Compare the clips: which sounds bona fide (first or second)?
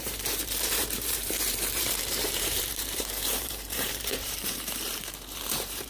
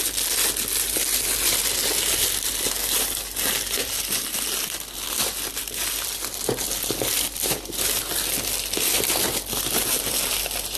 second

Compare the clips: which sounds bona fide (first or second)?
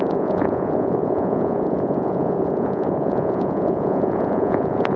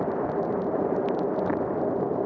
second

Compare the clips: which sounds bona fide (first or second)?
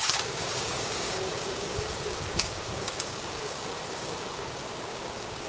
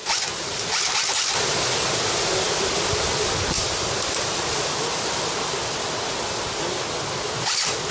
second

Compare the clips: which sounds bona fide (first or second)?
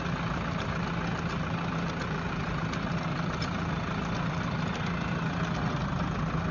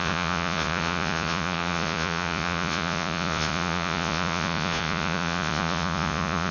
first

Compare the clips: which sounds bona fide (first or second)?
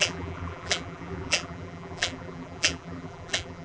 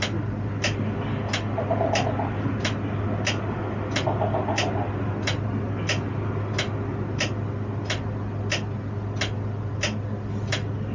second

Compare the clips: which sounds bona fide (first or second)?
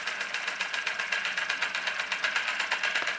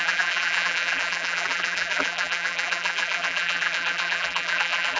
first